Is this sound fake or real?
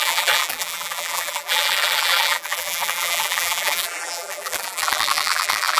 fake